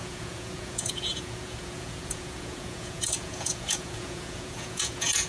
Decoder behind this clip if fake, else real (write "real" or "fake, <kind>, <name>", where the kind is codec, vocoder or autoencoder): fake, vocoder, Vocos